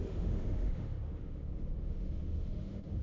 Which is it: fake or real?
fake